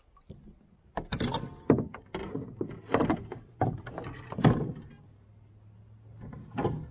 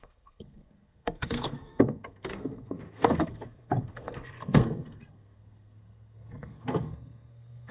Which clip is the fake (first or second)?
second